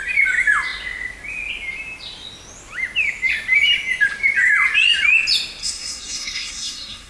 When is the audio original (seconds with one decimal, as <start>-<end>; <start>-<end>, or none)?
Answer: 0.0-5.6